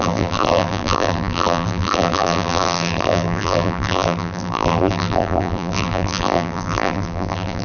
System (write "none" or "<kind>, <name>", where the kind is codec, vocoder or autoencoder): vocoder, BigVGAN v2